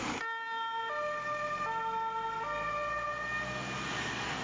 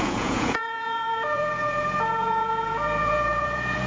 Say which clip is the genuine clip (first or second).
first